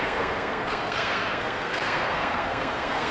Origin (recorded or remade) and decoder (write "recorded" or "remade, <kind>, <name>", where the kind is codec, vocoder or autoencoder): remade, codec, SNAC